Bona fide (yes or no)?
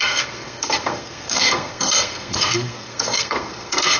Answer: no